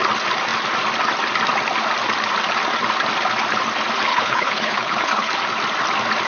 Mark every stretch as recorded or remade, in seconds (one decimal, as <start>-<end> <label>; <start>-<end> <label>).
0.0-4.1 recorded; 4.1-5.3 remade; 5.3-6.3 recorded